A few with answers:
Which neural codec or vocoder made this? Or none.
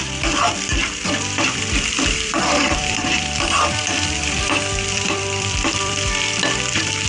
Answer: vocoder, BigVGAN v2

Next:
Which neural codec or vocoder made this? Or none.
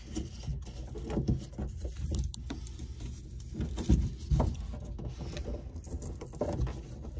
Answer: none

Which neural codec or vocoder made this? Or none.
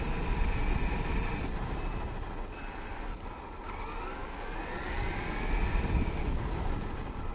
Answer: none